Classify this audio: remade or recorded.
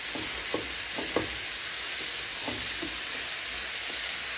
recorded